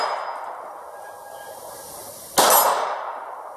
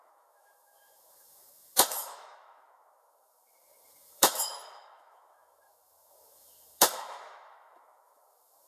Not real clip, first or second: second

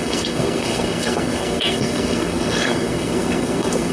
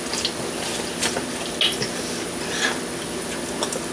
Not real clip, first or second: first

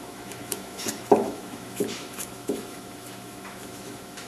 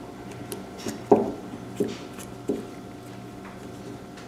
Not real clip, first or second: first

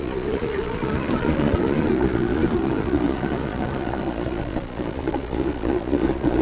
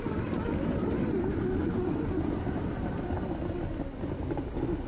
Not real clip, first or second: first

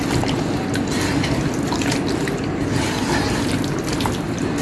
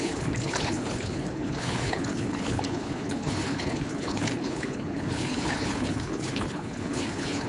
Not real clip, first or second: second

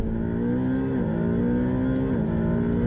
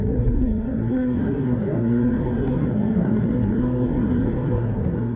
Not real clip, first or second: second